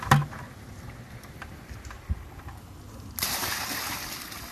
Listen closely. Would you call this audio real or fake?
real